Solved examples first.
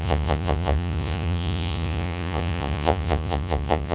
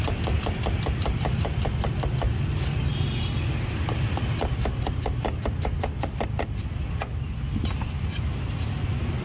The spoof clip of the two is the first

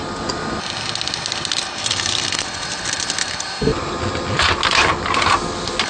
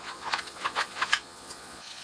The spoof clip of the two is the second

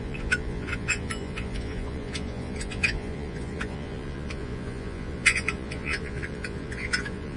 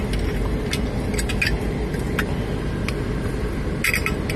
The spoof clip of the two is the first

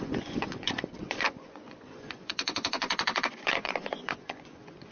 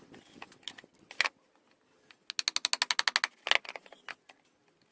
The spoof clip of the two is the first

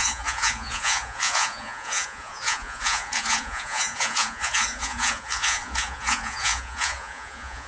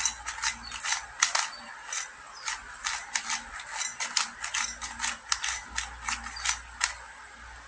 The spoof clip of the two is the first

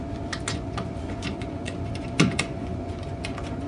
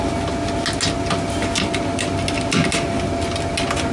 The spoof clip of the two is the first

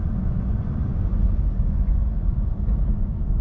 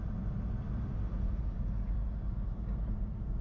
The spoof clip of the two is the first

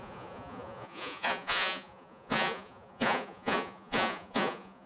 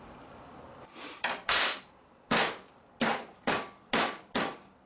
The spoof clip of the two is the first